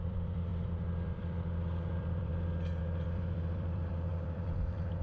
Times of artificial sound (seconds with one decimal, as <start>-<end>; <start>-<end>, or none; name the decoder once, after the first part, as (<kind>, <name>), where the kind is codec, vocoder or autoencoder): 0.0-2.3 (vocoder, BigVGAN v2); 2.8-5.0